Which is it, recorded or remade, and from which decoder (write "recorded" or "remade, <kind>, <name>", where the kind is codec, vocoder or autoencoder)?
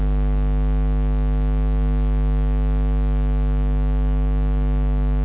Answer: remade, autoencoder, DAC-VAE